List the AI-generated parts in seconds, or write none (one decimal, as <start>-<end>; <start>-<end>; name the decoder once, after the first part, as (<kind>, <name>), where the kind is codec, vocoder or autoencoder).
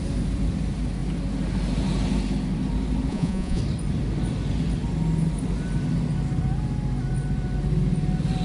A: 3.1-3.6 (vocoder, Vocos)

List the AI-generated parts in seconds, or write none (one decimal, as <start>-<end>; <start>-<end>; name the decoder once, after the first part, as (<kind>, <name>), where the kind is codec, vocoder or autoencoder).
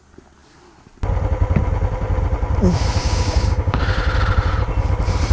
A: 3.0-3.8 (codec, DAC)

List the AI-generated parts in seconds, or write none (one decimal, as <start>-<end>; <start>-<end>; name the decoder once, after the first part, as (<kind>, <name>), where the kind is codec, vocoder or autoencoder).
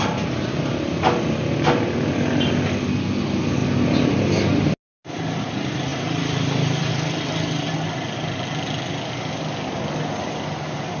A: 5.9-6.9 (vocoder, BigVGAN v2)